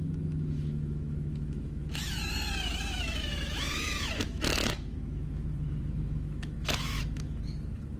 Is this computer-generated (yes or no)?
yes